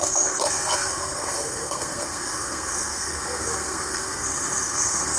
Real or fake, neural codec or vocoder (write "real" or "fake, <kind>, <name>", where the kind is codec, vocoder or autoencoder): fake, codec, SNAC